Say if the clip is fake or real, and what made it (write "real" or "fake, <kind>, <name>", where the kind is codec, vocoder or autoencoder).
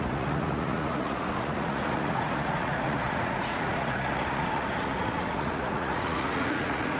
fake, vocoder, Vocos